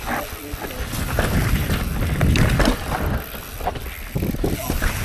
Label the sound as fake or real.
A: real